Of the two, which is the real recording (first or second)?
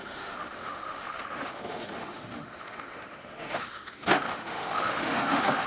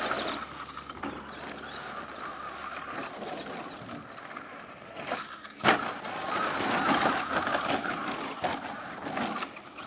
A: second